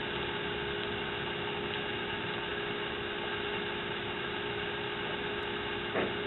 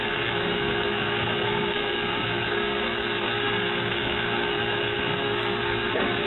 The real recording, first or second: first